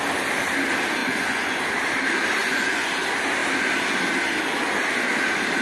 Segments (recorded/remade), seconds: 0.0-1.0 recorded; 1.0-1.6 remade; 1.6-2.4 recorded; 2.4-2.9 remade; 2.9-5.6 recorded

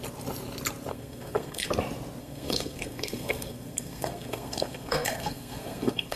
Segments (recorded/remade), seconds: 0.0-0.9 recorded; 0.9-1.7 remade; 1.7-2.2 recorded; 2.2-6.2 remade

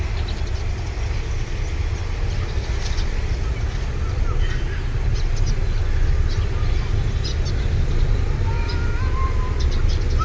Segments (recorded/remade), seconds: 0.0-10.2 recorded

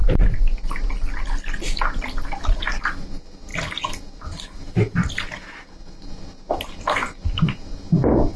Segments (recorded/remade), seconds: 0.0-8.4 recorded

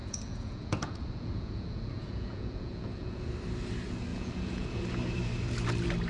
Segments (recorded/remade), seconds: 0.0-3.3 remade; 3.3-4.1 recorded; 4.1-4.8 remade; 4.8-6.1 recorded